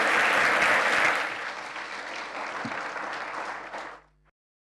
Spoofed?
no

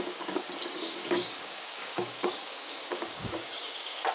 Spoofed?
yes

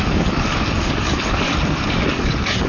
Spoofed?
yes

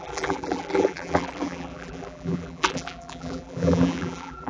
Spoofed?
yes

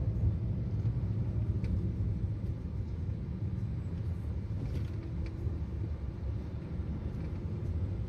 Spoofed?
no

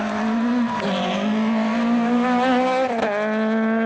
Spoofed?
no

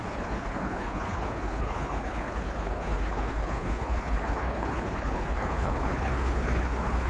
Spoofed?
yes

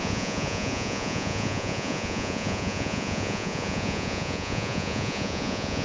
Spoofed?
yes